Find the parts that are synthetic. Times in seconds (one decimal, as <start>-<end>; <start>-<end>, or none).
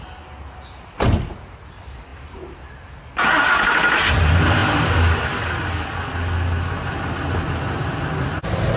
none